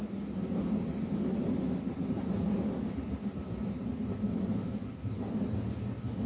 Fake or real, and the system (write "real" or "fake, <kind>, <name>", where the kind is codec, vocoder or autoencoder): real